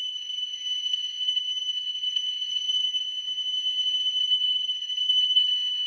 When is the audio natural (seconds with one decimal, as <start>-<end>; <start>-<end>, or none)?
3.0-4.2

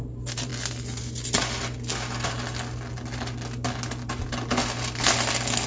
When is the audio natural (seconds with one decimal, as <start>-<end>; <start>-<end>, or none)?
0.0-5.7

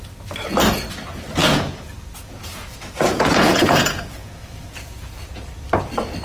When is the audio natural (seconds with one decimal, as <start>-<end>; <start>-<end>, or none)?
0.0-1.4; 5.1-6.2

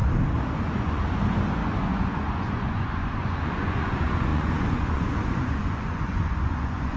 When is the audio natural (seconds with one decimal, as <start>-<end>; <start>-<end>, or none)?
0.0-0.5

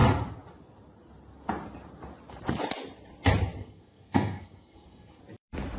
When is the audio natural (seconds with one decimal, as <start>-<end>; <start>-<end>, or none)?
0.0-3.6; 5.2-5.8

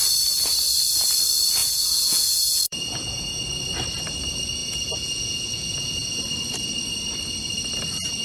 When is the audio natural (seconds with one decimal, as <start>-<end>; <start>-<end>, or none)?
0.0-1.6; 3.4-4.6; 6.2-8.2